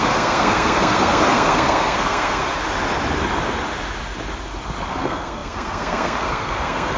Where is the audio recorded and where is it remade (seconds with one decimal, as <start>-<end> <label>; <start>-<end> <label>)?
0.0-2.4 remade; 2.4-4.9 recorded; 4.9-7.0 remade